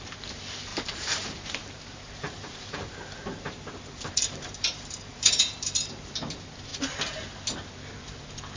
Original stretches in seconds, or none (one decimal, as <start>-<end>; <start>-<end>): 0.0-0.7; 5.9-8.6